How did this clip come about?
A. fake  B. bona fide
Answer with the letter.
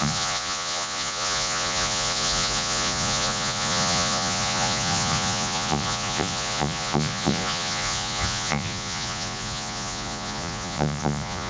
A